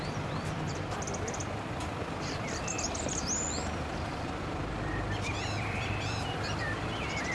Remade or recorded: remade